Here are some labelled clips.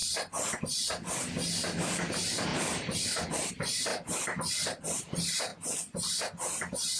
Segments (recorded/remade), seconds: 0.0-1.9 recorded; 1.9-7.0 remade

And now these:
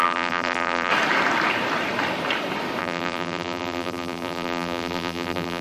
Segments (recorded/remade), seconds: 0.0-0.9 remade; 0.9-2.8 recorded; 2.8-5.6 remade